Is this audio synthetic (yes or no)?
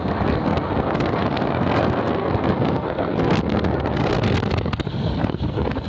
yes